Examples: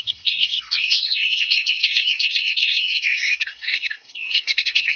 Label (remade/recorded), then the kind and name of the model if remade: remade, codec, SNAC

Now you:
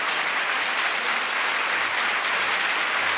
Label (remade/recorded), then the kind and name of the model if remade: recorded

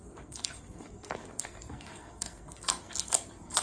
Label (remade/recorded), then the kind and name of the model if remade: remade, codec, SNAC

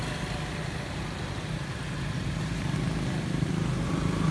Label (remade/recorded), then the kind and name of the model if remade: recorded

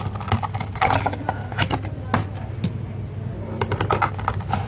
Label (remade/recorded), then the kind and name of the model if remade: recorded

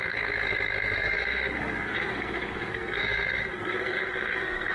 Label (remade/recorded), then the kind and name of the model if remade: remade, codec, SNAC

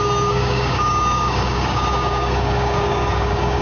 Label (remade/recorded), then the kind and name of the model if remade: remade, codec, DAC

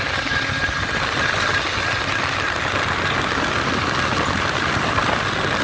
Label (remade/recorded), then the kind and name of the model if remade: recorded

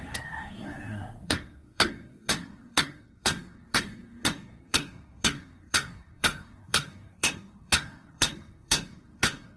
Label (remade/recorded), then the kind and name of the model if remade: remade, codec, SNAC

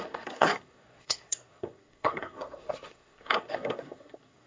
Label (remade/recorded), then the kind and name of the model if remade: remade, codec, SNAC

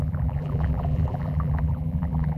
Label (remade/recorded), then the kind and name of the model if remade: remade, vocoder, BigVGAN v2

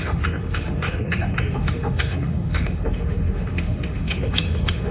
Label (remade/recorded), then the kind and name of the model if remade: remade, autoencoder, DAC-VAE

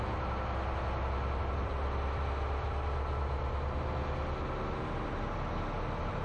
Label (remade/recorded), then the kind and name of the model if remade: recorded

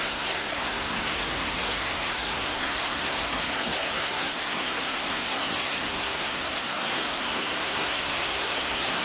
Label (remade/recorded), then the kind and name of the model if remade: remade, codec, SNAC